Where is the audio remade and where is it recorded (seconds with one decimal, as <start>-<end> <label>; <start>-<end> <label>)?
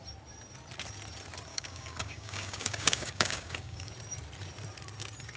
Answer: 0.0-1.5 recorded; 1.5-3.9 remade; 3.9-5.4 recorded